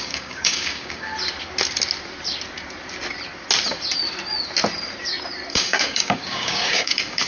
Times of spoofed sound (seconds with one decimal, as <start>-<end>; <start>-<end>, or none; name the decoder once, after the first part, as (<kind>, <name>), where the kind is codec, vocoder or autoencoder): 0.0-1.1 (codec, DAC); 5.5-7.3